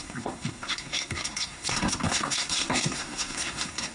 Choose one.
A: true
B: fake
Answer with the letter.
B